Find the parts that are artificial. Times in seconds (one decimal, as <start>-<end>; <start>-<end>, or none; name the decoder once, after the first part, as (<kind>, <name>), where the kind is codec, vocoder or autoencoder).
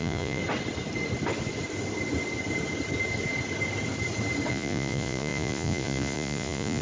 0.0-0.4 (vocoder, Vocos); 4.5-6.8